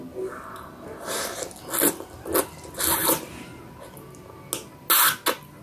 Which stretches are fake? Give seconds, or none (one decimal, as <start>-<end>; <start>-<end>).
none